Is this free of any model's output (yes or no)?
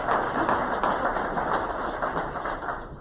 yes